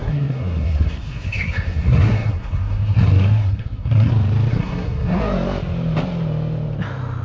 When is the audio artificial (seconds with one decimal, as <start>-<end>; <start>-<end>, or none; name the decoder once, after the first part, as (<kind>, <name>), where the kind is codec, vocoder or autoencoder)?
0.0-4.1 (codec, SNAC); 4.5-5.2